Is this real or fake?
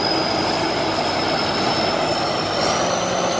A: real